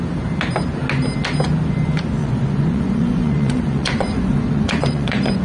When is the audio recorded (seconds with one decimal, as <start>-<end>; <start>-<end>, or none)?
0.0-2.2